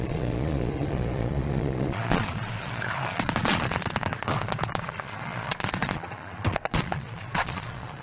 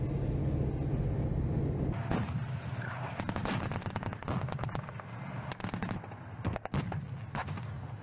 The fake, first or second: first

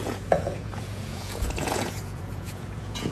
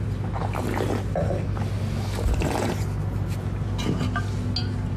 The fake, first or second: first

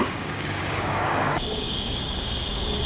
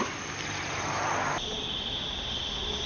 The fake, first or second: first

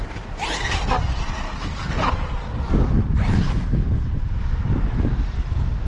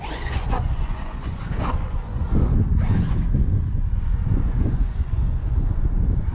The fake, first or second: second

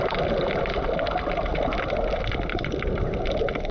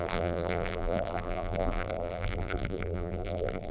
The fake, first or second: second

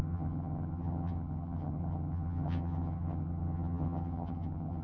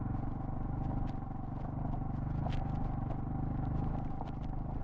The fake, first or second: first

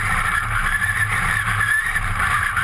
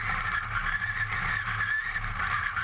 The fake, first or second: first